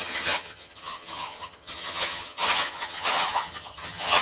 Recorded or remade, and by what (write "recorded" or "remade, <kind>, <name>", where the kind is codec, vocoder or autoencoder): remade, vocoder, HiFi-GAN